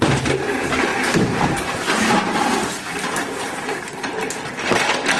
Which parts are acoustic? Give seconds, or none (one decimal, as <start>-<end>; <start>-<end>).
0.0-0.9; 4.0-5.2